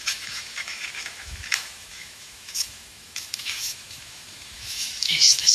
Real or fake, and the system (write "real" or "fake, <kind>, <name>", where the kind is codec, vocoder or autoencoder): fake, autoencoder, DAC-VAE